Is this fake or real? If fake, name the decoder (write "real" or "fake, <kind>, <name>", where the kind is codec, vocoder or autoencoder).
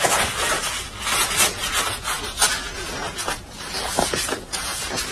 fake, vocoder, Vocos